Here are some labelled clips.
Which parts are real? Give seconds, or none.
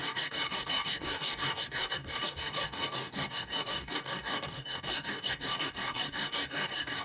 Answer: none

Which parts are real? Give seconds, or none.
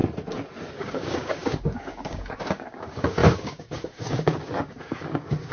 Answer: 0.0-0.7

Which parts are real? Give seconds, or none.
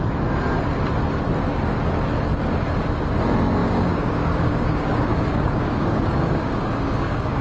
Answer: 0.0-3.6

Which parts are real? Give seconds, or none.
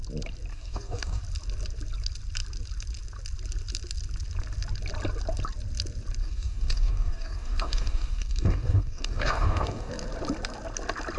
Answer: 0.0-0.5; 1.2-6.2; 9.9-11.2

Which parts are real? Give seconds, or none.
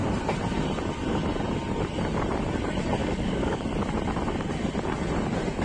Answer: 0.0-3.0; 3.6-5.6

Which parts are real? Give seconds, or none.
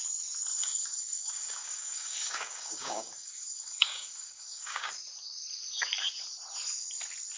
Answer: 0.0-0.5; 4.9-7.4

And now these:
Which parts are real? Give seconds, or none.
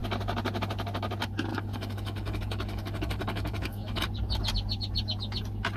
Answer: 0.0-1.5; 4.0-5.8